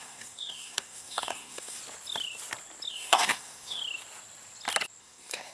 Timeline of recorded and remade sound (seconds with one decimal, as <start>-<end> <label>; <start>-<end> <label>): 0.0-1.8 remade; 1.8-2.9 recorded; 2.9-3.8 remade; 3.8-5.0 recorded; 5.0-5.5 remade